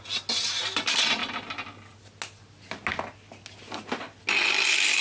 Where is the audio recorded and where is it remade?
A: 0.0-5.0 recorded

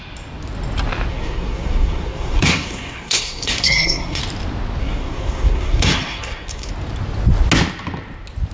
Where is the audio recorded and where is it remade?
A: 0.0-1.1 recorded; 1.1-4.2 remade; 4.2-4.8 recorded; 4.8-6.7 remade; 6.7-8.5 recorded

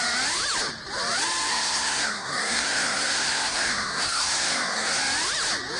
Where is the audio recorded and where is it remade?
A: 0.0-1.5 recorded; 1.5-5.0 remade; 5.0-5.8 recorded

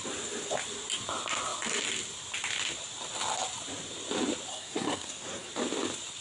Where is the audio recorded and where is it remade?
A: 0.0-4.5 recorded; 4.5-5.5 remade; 5.5-6.2 recorded